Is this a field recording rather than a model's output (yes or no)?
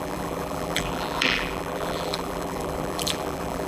no